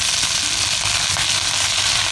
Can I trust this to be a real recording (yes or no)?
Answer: yes